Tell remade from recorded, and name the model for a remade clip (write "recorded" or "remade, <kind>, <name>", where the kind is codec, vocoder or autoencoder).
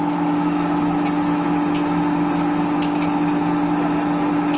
recorded